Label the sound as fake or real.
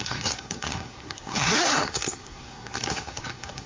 fake